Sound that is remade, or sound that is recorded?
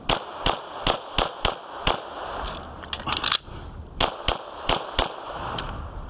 recorded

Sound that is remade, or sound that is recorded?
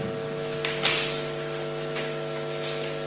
recorded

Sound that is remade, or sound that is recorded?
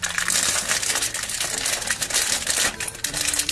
remade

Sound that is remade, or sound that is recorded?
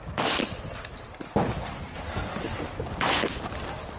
recorded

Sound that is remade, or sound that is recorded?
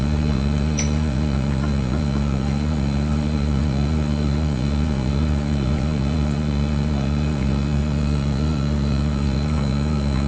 remade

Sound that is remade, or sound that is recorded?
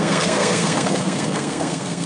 remade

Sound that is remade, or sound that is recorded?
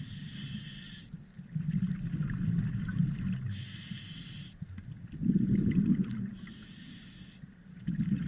recorded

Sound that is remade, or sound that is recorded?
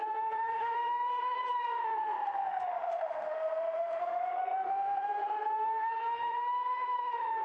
remade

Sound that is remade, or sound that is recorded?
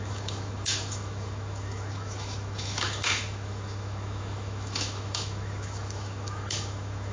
remade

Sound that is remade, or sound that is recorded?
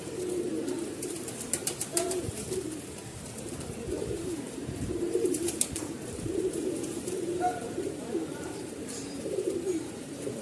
remade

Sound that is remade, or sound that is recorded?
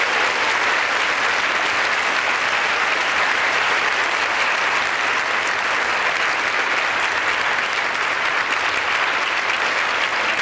recorded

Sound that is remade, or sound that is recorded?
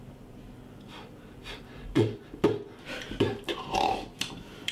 remade